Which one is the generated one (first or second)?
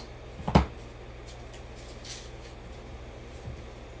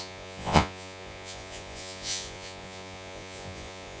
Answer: second